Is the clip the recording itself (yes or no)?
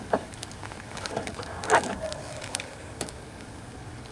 no